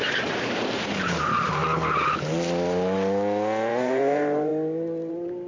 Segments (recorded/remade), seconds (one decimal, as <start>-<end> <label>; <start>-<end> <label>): 0.0-1.6 remade; 1.6-3.7 recorded; 3.7-4.5 remade; 4.5-5.1 recorded; 5.1-5.5 remade